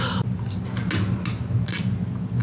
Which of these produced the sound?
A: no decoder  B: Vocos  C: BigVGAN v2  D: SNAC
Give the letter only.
A